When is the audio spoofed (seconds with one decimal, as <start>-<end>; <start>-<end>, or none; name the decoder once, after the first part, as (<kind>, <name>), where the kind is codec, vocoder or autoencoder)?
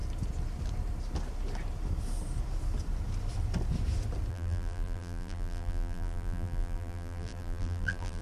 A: 4.3-8.2 (vocoder, BigVGAN v2)